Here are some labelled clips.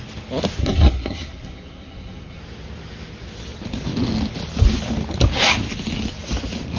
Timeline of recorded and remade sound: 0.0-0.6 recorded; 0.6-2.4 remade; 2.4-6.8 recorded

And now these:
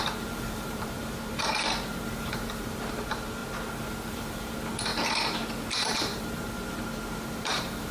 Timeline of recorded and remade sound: 0.0-3.4 remade; 3.4-4.1 recorded; 4.1-4.9 remade; 4.9-5.9 recorded; 5.9-7.9 remade